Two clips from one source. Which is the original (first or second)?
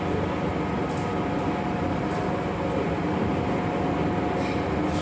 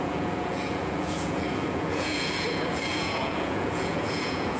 first